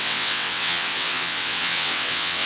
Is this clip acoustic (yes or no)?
no